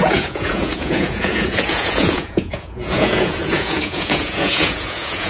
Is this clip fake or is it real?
fake